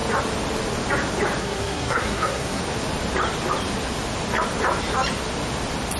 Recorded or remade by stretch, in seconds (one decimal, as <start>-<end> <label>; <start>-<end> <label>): 0.0-1.4 recorded; 1.4-2.6 remade; 2.6-6.0 recorded